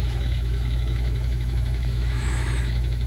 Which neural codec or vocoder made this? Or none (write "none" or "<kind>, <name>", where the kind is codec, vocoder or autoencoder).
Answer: autoencoder, DAC-VAE